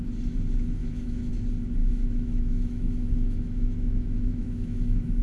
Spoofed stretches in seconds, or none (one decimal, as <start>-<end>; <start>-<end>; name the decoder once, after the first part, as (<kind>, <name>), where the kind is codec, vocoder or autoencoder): 0.8-1.3 (autoencoder, DAC-VAE); 1.8-5.2